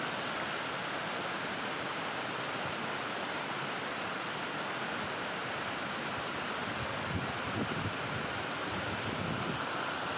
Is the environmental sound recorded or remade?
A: recorded